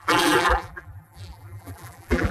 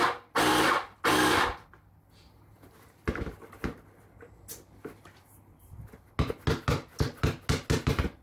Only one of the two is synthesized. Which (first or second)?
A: first